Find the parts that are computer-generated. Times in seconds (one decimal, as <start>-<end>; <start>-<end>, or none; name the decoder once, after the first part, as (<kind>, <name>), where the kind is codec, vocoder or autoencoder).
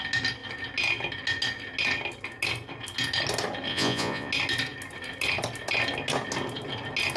3.7-4.3 (vocoder, Vocos)